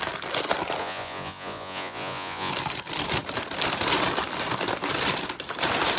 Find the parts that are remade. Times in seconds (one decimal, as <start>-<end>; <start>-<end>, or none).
0.8-2.5